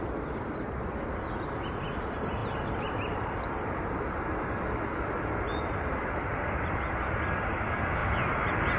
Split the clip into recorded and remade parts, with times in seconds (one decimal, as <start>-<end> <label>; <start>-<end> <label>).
0.0-8.8 recorded